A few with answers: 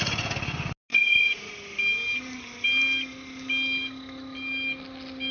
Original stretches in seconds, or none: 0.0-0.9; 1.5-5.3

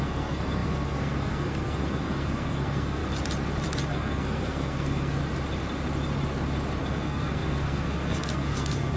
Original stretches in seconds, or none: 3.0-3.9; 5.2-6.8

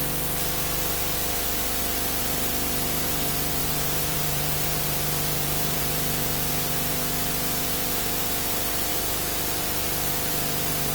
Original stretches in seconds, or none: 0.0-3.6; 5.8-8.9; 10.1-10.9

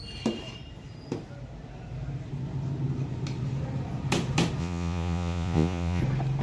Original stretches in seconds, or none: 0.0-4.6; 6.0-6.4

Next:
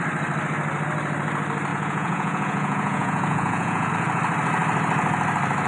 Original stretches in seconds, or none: 0.0-1.7; 3.9-5.7

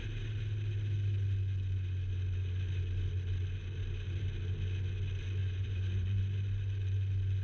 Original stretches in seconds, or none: 0.0-5.4; 6.2-7.4

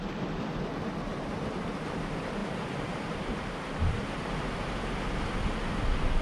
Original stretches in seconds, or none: 0.0-2.4; 4.3-6.2

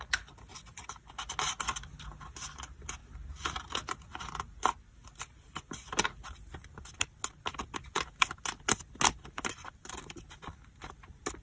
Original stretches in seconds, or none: 0.0-11.4